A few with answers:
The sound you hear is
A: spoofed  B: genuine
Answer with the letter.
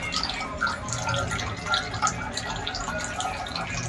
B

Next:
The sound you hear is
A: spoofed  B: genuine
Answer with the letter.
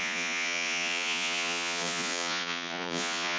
A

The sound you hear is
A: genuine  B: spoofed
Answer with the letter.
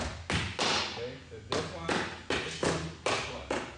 A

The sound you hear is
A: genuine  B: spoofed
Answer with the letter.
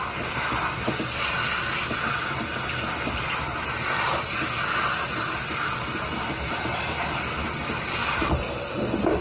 A